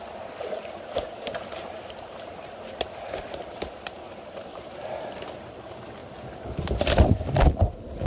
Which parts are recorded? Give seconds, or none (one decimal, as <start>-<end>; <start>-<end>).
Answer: 6.0-8.1